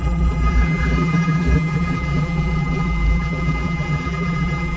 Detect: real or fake fake